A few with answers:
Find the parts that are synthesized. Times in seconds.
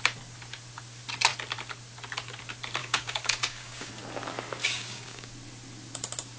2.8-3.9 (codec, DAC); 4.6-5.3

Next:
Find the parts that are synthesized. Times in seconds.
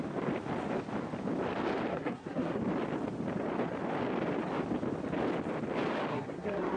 1.9-2.6 (codec, SNAC); 6.1-6.8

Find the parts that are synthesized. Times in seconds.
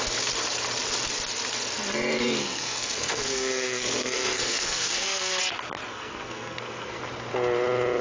2.4-5.4 (codec, SNAC); 5.9-7.0